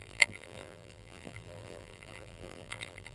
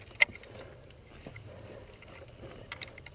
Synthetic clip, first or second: first